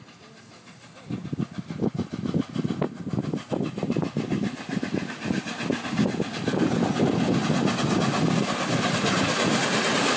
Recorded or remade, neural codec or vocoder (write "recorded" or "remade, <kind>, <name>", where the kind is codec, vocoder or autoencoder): recorded